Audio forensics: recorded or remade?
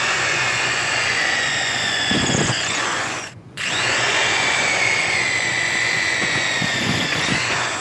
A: remade